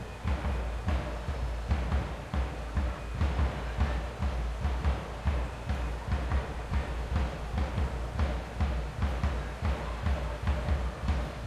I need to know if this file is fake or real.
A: real